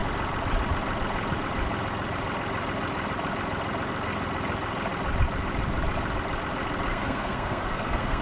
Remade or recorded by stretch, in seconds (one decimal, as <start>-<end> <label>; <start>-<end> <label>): 0.0-6.9 recorded; 6.9-8.2 remade